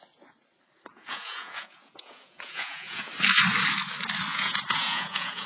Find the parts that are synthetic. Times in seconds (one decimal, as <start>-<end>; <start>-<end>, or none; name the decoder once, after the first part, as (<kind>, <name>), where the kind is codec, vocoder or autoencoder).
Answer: 0.9-3.1 (vocoder, Vocos); 4.3-5.5